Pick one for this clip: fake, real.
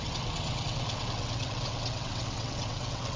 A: fake